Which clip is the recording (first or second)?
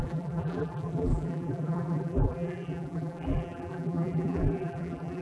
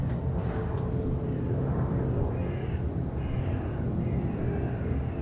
second